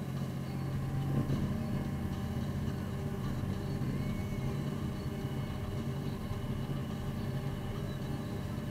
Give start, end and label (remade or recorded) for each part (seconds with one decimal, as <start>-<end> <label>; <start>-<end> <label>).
0.0-8.7 recorded